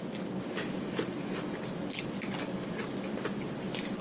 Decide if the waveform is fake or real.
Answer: real